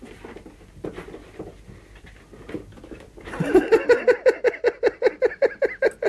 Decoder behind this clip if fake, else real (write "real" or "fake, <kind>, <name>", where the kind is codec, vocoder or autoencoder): real